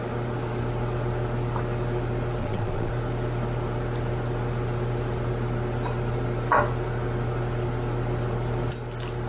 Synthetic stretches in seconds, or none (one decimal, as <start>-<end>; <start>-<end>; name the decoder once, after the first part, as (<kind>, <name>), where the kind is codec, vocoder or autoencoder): 2.4-2.9 (vocoder, Vocos)